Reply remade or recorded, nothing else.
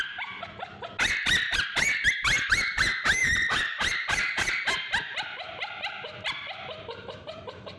recorded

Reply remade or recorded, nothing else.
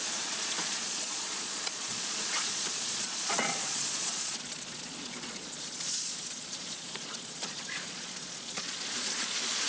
remade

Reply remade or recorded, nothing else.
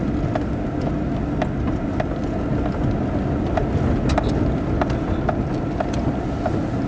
recorded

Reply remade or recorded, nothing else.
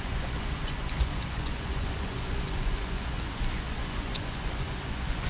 remade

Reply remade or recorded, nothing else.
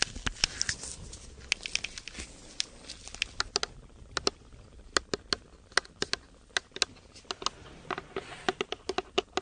recorded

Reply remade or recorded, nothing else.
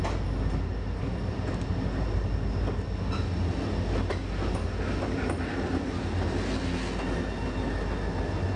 recorded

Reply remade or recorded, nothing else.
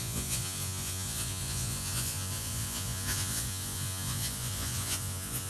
remade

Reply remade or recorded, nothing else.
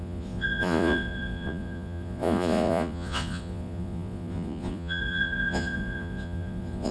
remade